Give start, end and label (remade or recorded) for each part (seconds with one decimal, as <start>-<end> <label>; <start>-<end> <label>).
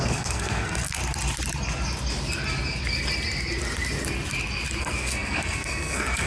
0.0-1.0 remade; 1.0-4.8 recorded; 4.8-6.3 remade